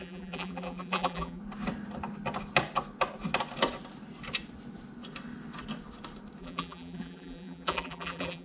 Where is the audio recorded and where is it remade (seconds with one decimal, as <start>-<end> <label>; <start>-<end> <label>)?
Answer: 0.0-1.4 remade; 1.4-6.4 recorded; 6.4-8.4 remade